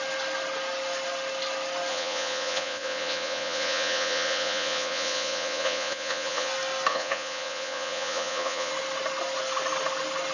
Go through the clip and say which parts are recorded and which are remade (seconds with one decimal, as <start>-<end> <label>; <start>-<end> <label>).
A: 0.0-1.9 recorded; 1.9-6.5 remade; 6.5-6.9 recorded; 6.9-8.7 remade; 8.7-10.3 recorded